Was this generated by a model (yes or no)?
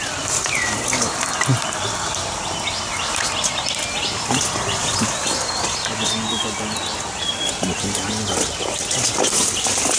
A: no